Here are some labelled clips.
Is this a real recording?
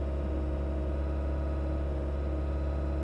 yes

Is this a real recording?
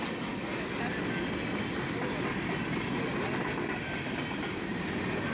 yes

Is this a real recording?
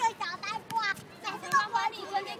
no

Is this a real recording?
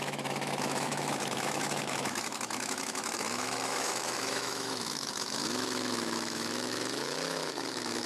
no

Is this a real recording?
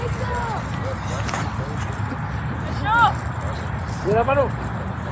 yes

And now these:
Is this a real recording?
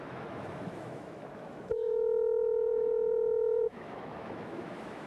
no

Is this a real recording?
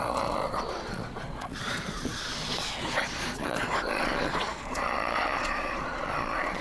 no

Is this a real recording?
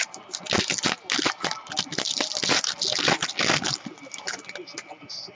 yes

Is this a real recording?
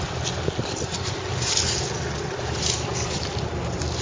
yes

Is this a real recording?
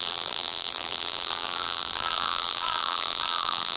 no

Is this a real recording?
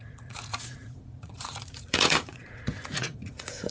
no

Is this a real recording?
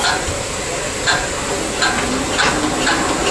yes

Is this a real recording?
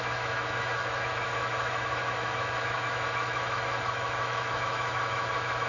no